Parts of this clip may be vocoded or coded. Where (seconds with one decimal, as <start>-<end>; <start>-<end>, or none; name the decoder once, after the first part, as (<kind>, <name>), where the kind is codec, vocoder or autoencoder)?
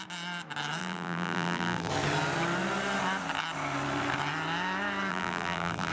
0.8-1.9 (vocoder, BigVGAN v2); 5.1-5.9